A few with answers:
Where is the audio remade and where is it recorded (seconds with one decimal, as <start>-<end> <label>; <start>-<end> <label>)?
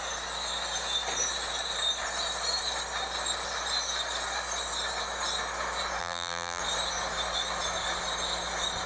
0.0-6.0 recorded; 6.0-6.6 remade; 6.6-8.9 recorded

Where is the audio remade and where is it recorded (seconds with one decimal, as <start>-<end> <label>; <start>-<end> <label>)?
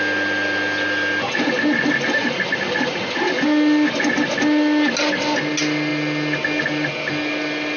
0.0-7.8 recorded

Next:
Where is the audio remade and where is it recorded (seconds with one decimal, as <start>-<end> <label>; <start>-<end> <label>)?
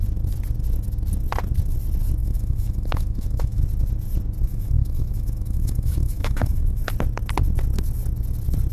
0.0-2.2 recorded; 2.2-3.6 remade; 3.6-4.5 recorded; 4.5-6.8 remade; 6.8-8.7 recorded